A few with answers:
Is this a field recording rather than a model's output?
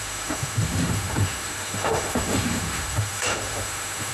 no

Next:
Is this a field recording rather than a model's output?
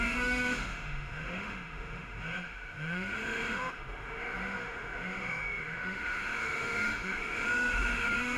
no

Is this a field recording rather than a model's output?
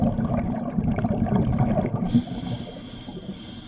yes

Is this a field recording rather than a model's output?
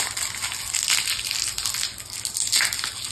yes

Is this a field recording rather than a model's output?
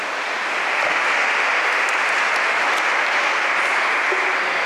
yes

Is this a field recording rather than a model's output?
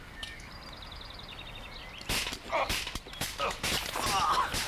yes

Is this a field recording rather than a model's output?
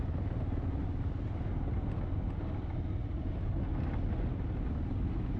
yes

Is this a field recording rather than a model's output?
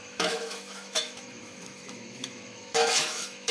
no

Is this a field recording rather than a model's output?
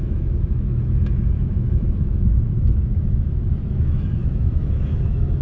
no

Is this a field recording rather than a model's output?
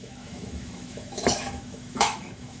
no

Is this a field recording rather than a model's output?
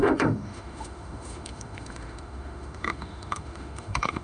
no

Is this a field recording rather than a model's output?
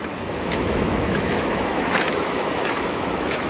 no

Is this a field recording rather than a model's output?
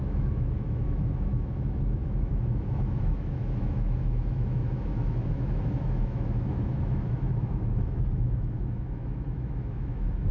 no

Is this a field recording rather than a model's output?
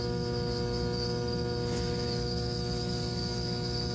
yes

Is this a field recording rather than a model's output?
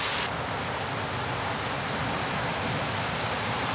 yes